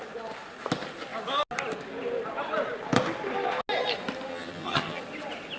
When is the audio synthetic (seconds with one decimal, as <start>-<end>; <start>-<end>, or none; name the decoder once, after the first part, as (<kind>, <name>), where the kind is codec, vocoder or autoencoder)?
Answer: 4.3-5.0 (vocoder, HiFi-GAN)